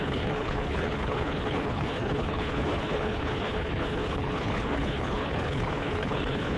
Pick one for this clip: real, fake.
fake